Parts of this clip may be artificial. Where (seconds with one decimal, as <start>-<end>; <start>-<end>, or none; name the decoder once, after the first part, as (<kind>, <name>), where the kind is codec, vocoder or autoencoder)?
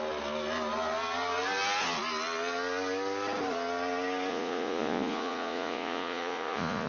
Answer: 4.3-6.9 (vocoder, Vocos)